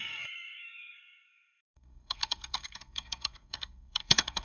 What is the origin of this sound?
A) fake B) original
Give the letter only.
A